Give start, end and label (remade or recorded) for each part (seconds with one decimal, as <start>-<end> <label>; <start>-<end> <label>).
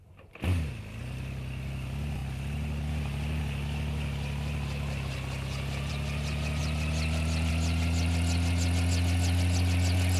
0.0-6.6 recorded; 6.6-7.5 remade; 7.5-10.2 recorded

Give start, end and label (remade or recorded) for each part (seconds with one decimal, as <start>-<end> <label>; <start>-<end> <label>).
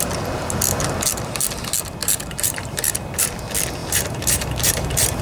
0.0-2.0 recorded; 2.0-3.4 remade; 3.4-3.8 recorded; 3.8-5.2 remade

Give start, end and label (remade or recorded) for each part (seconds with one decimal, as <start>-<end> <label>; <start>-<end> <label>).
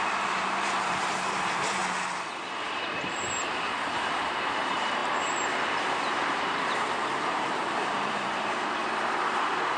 0.0-1.8 remade; 1.8-2.4 recorded; 2.4-8.8 remade; 8.8-9.8 recorded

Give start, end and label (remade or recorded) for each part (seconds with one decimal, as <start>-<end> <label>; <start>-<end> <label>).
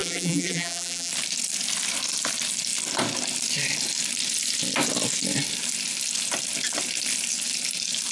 0.0-1.1 remade; 1.1-8.1 recorded